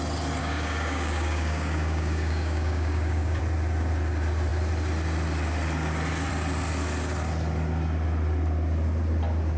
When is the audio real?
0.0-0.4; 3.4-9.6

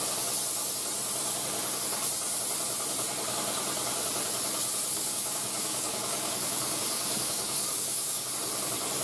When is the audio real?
0.0-4.9; 8.3-9.0

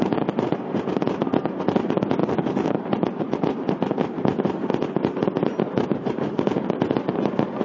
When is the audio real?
0.0-2.2; 2.7-7.6

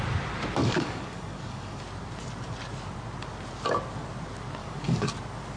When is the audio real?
0.0-0.6; 1.8-4.6; 5.1-5.6

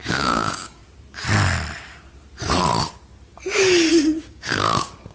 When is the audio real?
0.8-3.9

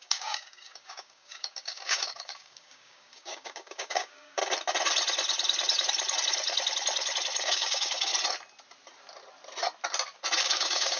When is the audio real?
4.4-7.4; 8.1-10.4

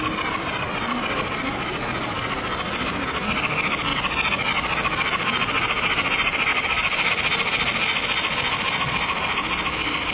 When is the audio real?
0.0-6.5; 7.1-10.1

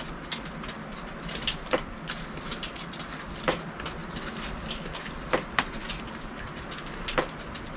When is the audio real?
0.0-7.8